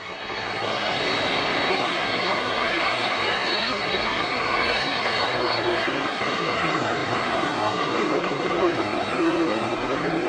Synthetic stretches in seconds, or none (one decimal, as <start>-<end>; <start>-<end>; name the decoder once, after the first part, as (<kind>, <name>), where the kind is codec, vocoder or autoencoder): 0.0-1.0 (codec, SNAC); 1.7-10.3